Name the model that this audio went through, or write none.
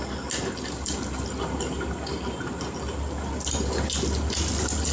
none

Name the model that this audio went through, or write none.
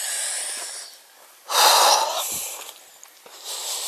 none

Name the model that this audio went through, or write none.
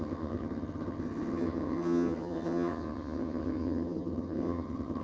vocoder, HiFi-GAN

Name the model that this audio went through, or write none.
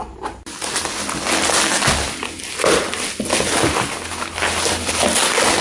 none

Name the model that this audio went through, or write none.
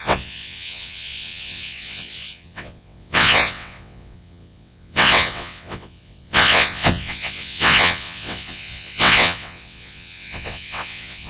vocoder, WaveNeXt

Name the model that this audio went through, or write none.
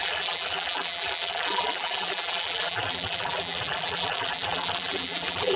vocoder, BigVGAN v2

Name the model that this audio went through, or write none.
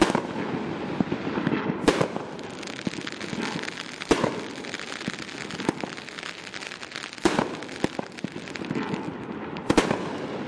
none